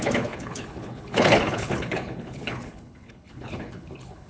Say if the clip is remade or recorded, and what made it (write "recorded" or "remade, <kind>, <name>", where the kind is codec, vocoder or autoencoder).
remade, codec, HILCodec